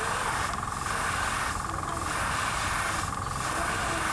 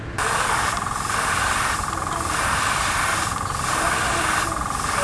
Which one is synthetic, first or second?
second